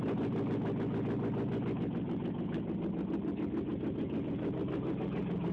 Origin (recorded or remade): recorded